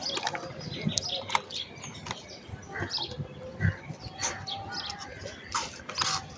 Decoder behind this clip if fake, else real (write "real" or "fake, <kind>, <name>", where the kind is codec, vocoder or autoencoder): fake, vocoder, BigVGAN v2